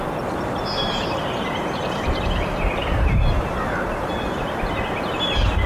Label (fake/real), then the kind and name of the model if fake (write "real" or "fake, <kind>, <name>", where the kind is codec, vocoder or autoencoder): real